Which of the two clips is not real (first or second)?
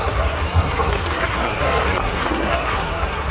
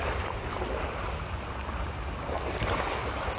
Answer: first